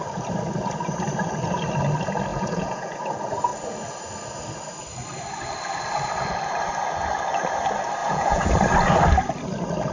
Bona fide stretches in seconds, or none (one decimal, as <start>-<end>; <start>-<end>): 0.0-2.3; 3.0-8.0; 8.5-9.9